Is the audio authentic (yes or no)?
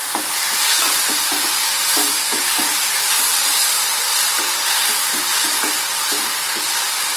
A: yes